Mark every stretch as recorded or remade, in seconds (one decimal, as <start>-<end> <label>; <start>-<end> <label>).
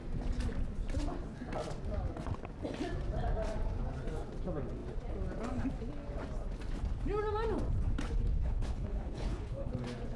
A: 0.0-8.3 recorded; 8.3-9.7 remade; 9.7-10.2 recorded